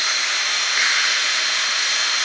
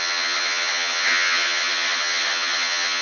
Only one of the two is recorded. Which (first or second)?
first